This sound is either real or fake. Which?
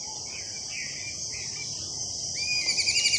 real